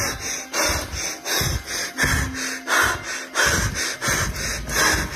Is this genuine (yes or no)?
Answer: yes